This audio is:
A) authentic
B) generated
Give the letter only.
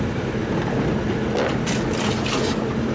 A